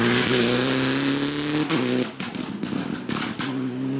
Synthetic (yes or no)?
no